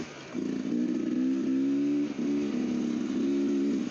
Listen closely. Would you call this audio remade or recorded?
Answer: recorded